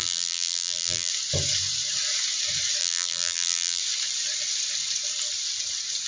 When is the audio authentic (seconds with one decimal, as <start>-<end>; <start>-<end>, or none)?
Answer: 1.1-2.8; 3.8-6.1